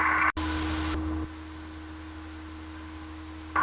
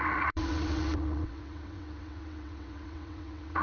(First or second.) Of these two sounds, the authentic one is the first